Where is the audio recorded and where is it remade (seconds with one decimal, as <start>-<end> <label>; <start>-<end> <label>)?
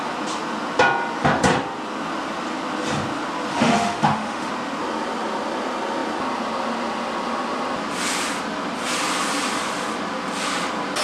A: 0.0-3.5 recorded; 3.5-4.5 remade; 4.5-11.0 recorded